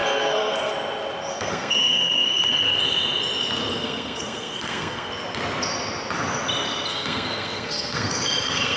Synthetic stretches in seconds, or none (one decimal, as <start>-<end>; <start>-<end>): 0.0-0.7; 1.3-2.8; 3.7-5.1; 6.9-8.8